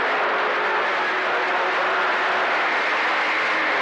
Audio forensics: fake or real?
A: fake